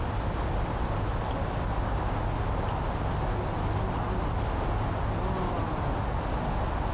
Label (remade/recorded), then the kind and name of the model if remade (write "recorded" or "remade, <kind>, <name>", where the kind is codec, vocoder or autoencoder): recorded